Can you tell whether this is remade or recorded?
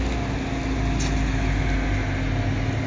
recorded